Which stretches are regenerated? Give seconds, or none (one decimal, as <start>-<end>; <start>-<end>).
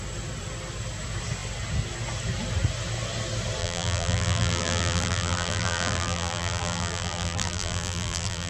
3.6-8.5